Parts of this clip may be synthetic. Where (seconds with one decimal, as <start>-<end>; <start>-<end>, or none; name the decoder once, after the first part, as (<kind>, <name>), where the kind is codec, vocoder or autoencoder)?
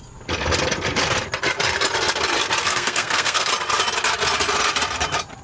2.6-3.5 (codec, SNAC)